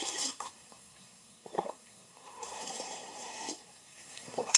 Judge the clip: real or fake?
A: fake